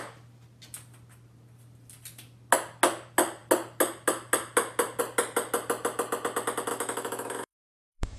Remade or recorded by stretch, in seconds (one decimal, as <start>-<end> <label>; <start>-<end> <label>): 0.0-6.7 recorded; 6.7-8.2 remade